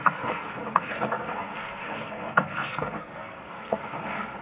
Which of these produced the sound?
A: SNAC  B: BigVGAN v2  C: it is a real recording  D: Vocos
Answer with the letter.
A